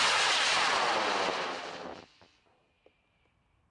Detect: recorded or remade recorded